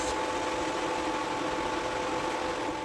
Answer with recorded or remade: recorded